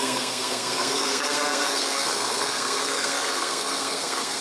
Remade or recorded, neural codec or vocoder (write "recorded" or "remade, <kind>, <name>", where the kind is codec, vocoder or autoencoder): remade, codec, SNAC